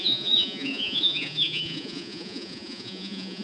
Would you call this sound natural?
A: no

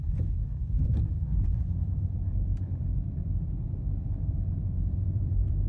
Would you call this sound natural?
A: no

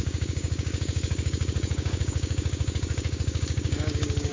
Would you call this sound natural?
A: no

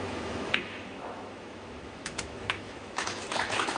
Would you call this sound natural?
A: no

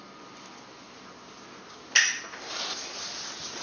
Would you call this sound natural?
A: yes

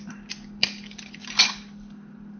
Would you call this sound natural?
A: yes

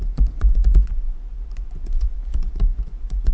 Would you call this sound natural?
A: no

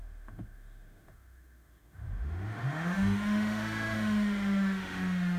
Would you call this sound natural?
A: no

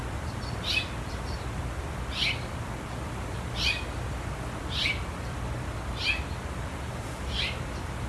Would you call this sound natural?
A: yes